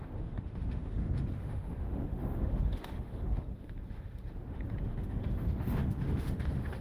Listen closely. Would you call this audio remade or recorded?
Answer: remade